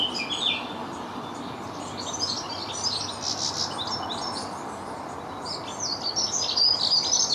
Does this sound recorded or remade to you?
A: recorded